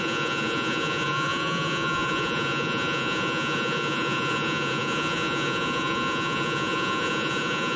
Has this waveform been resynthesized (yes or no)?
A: yes